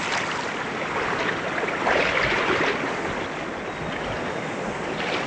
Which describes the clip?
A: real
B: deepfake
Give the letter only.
A